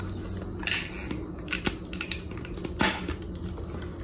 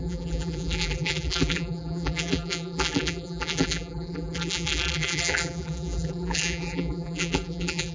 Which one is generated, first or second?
second